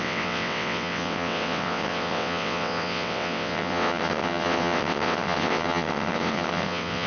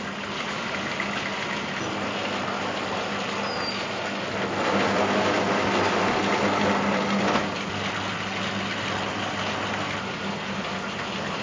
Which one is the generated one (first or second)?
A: first